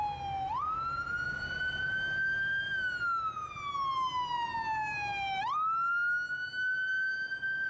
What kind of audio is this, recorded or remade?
recorded